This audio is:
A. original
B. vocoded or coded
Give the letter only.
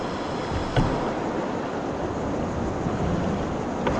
A